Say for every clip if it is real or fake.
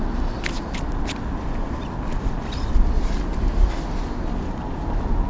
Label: real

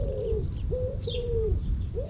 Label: fake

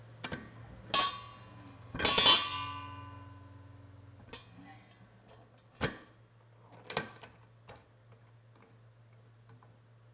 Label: real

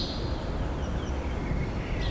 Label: real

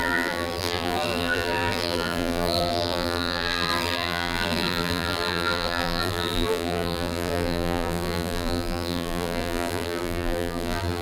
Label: fake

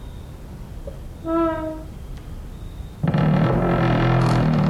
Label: real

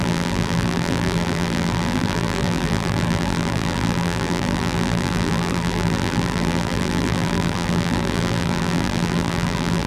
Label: fake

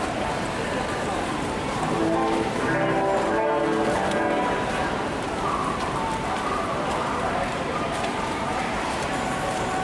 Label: fake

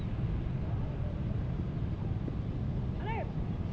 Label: real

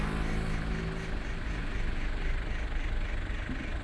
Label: real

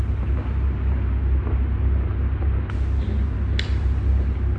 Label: real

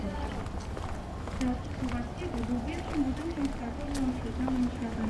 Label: real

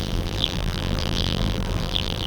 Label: fake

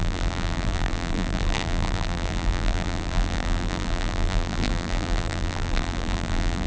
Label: fake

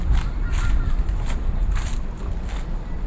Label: real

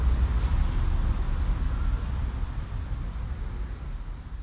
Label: real